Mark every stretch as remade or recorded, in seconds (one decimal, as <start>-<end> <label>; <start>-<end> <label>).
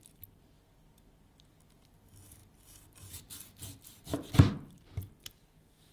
0.0-5.9 recorded